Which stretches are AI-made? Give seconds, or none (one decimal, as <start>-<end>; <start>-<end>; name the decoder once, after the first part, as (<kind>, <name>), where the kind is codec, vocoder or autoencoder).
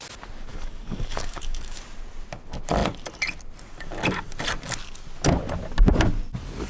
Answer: 0.5-1.8 (codec, DAC)